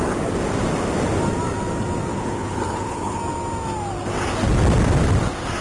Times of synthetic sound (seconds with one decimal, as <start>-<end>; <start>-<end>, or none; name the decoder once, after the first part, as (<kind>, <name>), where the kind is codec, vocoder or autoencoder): 2.1-3.2 (codec, HILCodec)